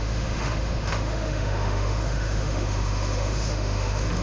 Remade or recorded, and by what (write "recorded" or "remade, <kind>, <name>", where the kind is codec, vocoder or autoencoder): remade, autoencoder, DAC-VAE